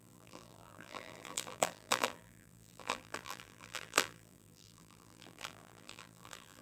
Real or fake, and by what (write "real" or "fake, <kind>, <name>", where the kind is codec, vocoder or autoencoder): fake, vocoder, BigVGAN v2